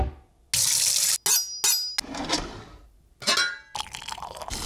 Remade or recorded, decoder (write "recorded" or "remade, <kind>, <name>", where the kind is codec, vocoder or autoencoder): recorded